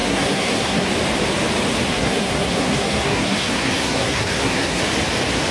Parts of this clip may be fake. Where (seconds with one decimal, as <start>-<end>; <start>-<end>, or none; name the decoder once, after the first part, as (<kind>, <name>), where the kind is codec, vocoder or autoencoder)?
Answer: 0.0-0.9 (codec, SNAC); 1.9-4.8